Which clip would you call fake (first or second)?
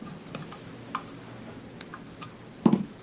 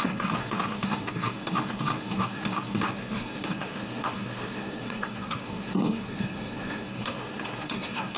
second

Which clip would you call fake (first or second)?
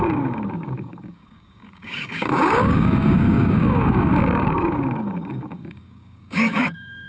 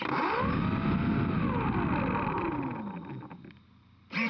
first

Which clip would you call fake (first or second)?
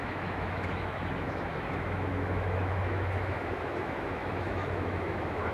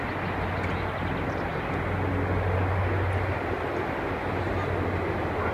first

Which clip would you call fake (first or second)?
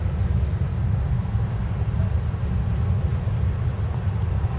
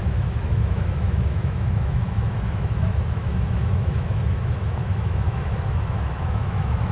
second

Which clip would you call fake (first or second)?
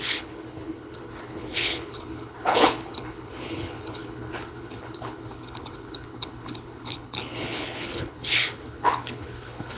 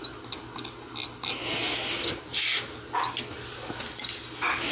first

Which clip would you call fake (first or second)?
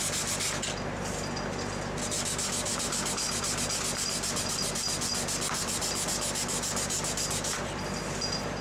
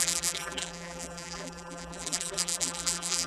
second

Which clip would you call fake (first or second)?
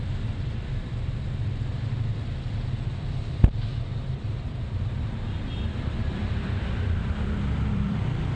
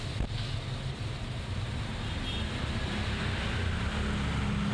first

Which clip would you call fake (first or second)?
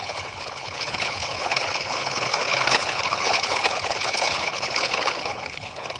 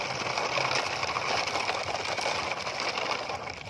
first